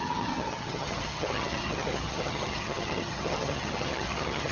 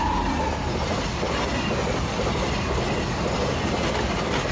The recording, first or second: second